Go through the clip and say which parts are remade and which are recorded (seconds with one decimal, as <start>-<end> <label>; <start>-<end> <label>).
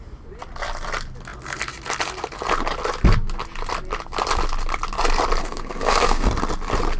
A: 0.0-5.4 recorded; 5.4-6.3 remade; 6.3-7.0 recorded